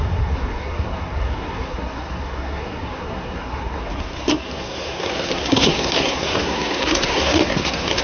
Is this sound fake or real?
fake